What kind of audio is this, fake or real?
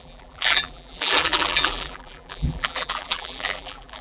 fake